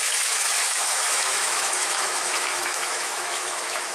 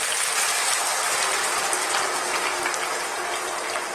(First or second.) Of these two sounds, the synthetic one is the first